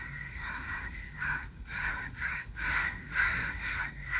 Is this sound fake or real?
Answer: fake